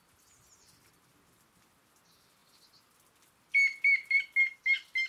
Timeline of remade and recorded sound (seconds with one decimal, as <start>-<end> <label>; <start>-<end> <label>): 0.0-5.1 recorded